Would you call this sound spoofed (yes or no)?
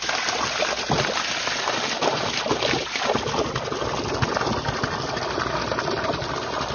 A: no